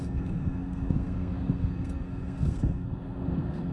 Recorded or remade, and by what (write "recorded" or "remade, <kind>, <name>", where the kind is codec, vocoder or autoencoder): remade, codec, SNAC